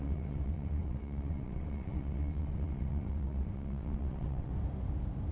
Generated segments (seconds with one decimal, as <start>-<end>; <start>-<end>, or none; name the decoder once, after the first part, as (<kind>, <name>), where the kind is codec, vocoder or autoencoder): 0.0-4.5 (vocoder, WaveNeXt)